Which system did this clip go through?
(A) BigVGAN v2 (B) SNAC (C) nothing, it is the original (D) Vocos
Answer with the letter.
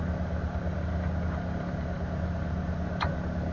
C